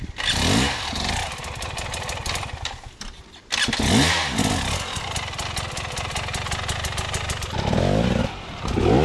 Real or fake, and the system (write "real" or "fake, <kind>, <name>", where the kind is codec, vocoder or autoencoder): real